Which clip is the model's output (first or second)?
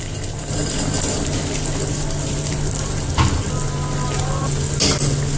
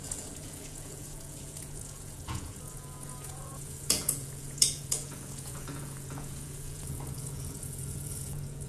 second